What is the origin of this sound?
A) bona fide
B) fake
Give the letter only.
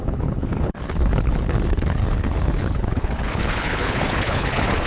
B